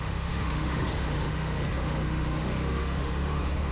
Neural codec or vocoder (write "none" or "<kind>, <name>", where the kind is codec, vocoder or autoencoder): autoencoder, DAC-VAE